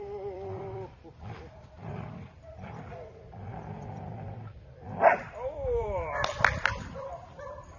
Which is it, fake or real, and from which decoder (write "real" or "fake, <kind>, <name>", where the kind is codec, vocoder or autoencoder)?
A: fake, vocoder, BigVGAN v2